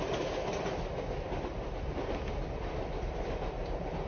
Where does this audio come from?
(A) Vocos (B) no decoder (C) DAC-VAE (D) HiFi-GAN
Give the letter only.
B